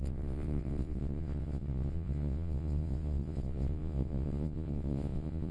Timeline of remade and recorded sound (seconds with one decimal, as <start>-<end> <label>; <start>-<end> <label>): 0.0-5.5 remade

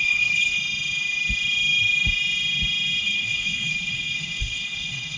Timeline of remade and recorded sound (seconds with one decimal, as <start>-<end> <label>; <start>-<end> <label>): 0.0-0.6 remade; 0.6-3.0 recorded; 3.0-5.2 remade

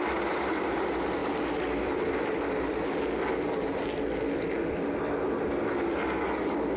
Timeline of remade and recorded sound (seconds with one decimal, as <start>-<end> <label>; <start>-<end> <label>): 0.0-0.6 remade; 0.6-6.8 recorded

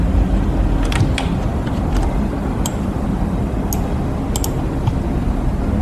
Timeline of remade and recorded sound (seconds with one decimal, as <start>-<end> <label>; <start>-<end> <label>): 0.0-1.5 recorded; 1.5-3.7 remade; 3.7-5.8 recorded

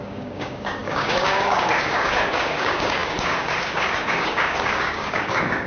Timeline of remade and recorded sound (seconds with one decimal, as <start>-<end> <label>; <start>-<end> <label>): 0.0-5.7 remade

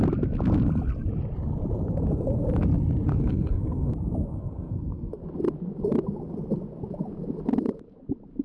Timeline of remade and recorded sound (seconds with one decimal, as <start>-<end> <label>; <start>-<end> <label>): 0.0-3.1 recorded; 3.1-3.9 remade; 3.9-4.3 recorded; 4.3-5.2 remade; 5.2-8.4 recorded

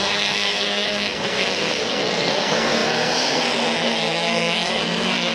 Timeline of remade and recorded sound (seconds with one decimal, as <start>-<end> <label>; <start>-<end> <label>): 0.0-5.3 remade

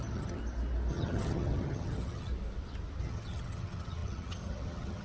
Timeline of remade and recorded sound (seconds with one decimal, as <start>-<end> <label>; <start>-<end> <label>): 0.0-0.4 remade; 0.4-0.9 recorded; 0.9-2.3 remade; 2.3-3.0 recorded; 3.0-5.0 remade